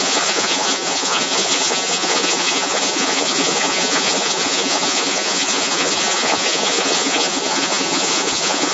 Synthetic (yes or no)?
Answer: yes